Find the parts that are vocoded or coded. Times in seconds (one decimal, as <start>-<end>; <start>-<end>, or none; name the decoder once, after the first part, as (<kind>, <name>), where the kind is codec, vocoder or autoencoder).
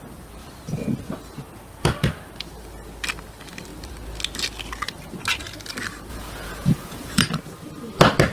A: 6.1-7.2 (vocoder, Vocos)